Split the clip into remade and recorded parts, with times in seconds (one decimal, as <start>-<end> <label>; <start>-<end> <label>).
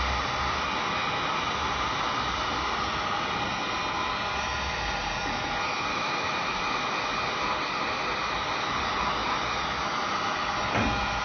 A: 0.0-5.9 recorded; 5.9-6.6 remade; 6.6-11.2 recorded